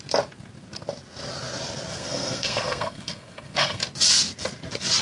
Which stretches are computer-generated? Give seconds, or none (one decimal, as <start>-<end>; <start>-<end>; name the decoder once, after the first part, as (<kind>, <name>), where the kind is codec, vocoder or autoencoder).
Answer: 1.9-3.8 (codec, SNAC)